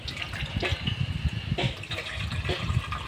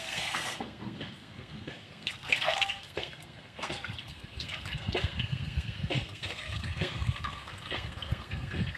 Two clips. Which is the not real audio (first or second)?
second